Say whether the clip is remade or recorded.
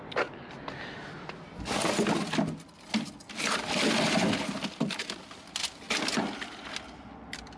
recorded